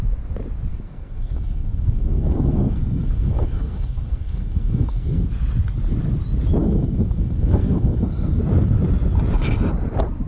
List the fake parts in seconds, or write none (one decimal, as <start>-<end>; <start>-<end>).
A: 0.7-5.2; 6.6-8.4